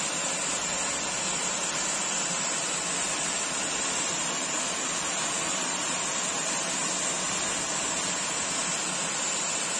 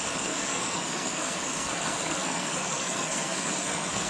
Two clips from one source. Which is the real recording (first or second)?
first